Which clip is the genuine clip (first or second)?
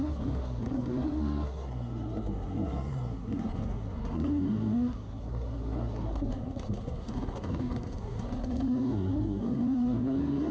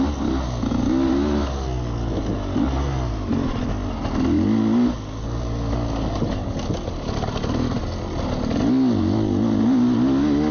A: second